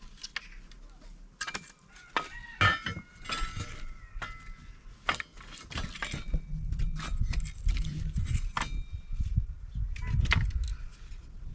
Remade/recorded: recorded